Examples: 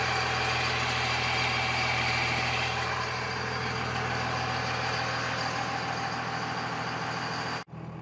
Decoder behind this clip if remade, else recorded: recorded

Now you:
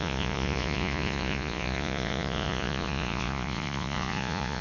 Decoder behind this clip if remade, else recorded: remade, vocoder, Vocos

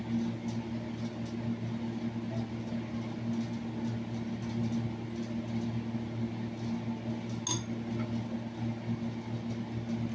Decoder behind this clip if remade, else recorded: recorded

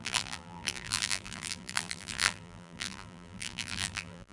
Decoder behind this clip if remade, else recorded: remade, vocoder, BigVGAN v2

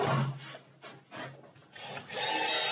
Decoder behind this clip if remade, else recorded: recorded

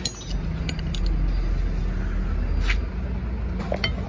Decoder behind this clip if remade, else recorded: recorded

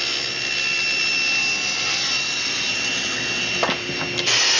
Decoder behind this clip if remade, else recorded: recorded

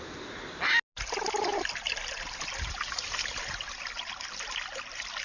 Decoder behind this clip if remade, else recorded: recorded